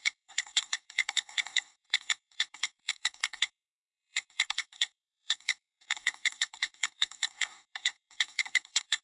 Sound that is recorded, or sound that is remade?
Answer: remade